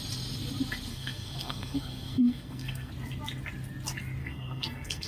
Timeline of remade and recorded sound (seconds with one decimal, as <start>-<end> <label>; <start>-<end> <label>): 0.0-0.9 recorded; 0.9-2.9 remade; 2.9-4.2 recorded; 4.2-5.1 remade